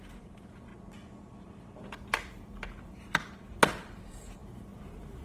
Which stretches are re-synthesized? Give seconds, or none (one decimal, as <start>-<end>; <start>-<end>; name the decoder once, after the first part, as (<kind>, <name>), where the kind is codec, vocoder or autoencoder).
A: 0.0-0.7 (vocoder, BigVGAN v2); 2.9-5.2